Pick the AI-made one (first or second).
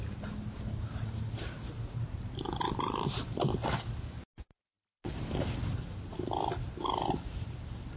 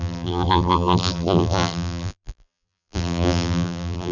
second